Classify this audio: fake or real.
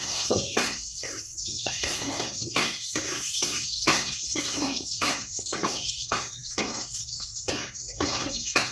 fake